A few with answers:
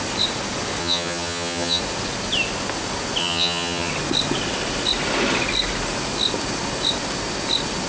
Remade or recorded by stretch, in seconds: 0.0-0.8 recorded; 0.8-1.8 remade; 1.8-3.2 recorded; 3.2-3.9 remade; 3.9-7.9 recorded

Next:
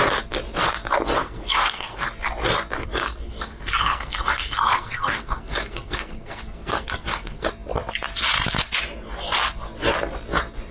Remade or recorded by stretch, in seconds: 0.0-1.2 recorded; 1.2-2.1 remade; 2.1-2.8 recorded; 2.8-7.5 remade; 7.5-10.7 recorded

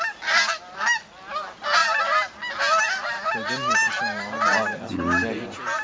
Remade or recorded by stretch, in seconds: 0.0-5.8 recorded

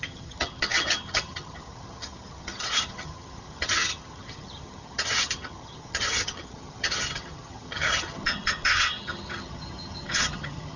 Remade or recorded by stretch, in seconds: 0.0-10.8 remade

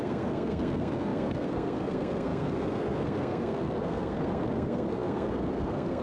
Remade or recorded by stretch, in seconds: 0.0-6.0 remade

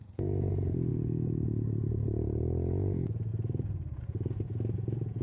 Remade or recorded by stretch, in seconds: 0.0-0.9 remade; 0.9-2.0 recorded; 2.0-5.2 remade

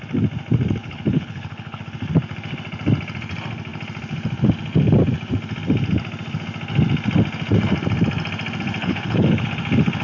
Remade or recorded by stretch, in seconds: 0.0-0.8 recorded; 0.8-1.8 remade; 1.8-8.8 recorded; 8.8-9.5 remade; 9.5-10.0 recorded